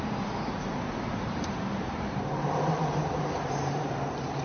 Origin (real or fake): fake